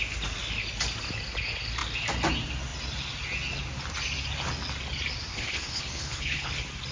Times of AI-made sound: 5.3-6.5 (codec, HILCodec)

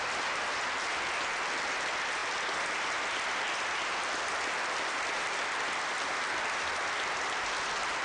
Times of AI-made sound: none